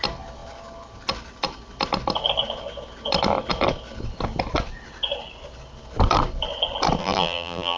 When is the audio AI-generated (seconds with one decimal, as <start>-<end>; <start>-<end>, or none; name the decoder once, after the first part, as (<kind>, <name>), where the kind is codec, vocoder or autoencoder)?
7.0-7.8 (vocoder, BigVGAN v2)